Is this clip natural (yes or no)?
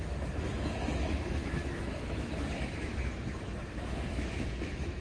no